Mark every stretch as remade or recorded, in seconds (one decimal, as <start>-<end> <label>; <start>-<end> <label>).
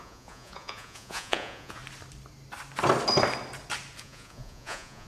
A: 0.0-1.8 remade; 1.8-4.0 recorded; 4.0-5.1 remade